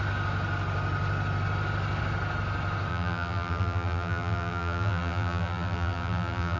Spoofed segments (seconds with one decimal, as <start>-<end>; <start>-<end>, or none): 2.9-6.6